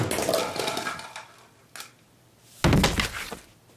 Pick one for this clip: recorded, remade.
recorded